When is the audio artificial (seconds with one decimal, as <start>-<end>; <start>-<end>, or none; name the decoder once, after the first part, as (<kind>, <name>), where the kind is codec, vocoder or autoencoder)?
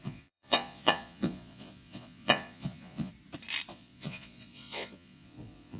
0.0-3.1 (vocoder, Vocos); 3.7-5.8